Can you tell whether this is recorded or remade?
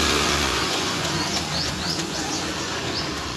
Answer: remade